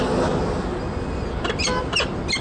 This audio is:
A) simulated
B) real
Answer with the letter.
B